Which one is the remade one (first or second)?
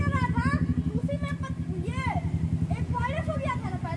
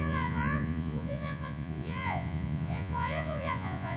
second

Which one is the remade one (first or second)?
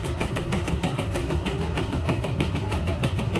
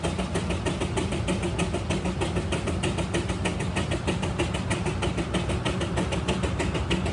first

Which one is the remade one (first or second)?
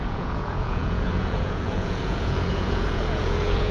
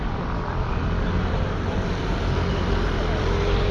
first